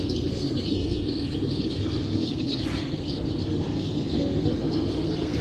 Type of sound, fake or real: fake